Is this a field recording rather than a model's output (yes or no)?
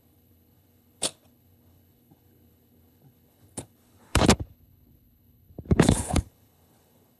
no